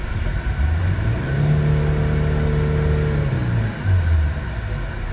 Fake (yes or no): no